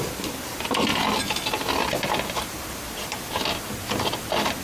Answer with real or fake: real